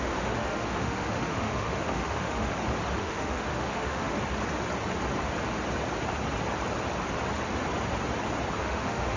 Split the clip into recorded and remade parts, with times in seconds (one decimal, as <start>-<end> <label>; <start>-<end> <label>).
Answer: 0.0-2.5 remade; 2.5-3.0 recorded; 3.0-4.2 remade; 4.2-8.6 recorded; 8.6-9.2 remade